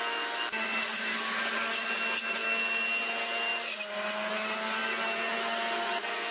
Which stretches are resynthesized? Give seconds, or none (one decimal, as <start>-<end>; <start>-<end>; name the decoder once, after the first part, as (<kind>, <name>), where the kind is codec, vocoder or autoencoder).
1.1-1.9 (codec, DAC)